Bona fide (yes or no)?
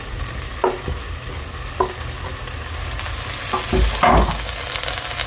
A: yes